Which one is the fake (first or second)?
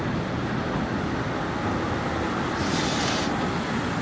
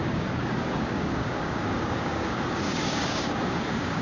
second